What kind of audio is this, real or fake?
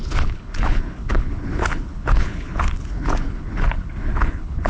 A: fake